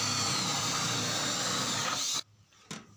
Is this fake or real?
real